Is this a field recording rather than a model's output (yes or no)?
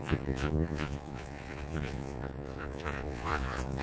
no